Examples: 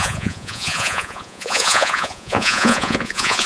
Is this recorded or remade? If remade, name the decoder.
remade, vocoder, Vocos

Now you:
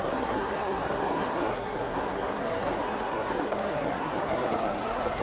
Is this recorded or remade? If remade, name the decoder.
remade, codec, SNAC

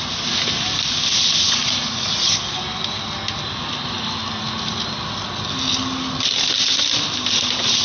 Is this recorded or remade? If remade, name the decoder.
recorded